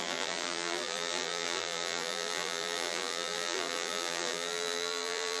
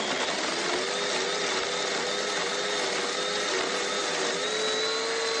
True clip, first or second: second